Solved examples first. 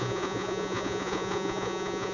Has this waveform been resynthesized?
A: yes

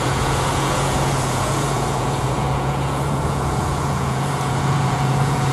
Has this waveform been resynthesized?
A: yes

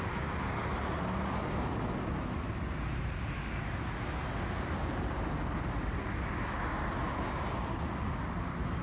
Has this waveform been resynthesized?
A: no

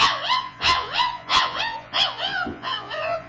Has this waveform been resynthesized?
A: yes